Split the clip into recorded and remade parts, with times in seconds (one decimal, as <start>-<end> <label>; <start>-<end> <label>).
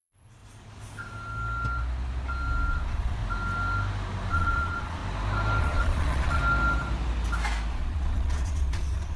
0.0-0.4 remade; 0.4-2.7 recorded; 2.7-3.2 remade; 3.2-4.3 recorded; 4.3-5.0 remade; 5.0-5.6 recorded; 5.6-6.4 remade; 6.4-7.7 recorded; 7.7-9.2 remade